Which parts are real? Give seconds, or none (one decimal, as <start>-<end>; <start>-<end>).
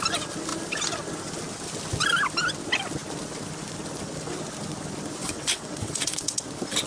0.0-5.2; 6.4-6.9